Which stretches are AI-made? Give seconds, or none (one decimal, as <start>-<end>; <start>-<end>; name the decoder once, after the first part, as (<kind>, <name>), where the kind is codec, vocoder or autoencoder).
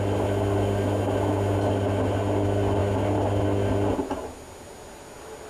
none